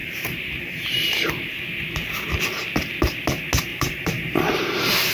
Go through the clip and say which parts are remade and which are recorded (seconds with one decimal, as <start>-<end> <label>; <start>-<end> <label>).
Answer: 0.0-1.5 remade; 1.5-3.7 recorded; 3.7-5.1 remade